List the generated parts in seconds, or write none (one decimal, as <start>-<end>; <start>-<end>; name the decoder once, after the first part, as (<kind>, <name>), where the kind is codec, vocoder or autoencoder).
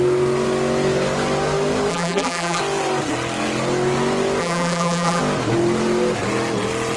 1.9-2.6 (vocoder, BigVGAN v2); 4.4-5.2